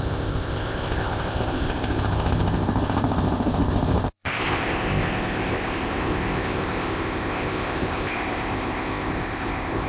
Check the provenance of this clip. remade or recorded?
remade